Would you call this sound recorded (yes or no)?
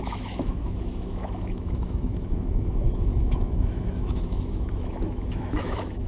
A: no